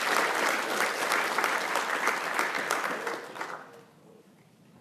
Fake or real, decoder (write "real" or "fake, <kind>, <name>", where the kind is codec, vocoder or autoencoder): real